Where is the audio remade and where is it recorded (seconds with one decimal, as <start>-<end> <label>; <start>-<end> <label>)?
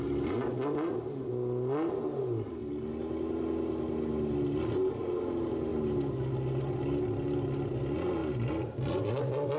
0.0-9.6 recorded